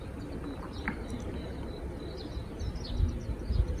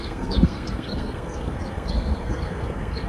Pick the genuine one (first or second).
first